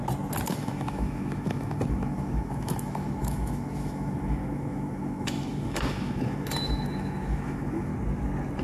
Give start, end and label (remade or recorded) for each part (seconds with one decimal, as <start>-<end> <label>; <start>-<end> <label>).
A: 0.0-0.5 recorded; 0.5-7.9 remade; 7.9-8.6 recorded